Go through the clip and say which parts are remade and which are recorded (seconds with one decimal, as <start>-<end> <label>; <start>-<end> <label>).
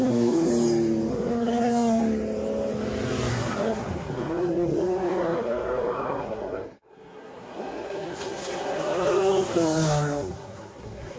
0.0-0.5 remade; 0.5-1.1 recorded; 1.1-2.0 remade; 2.0-3.3 recorded; 3.3-11.2 remade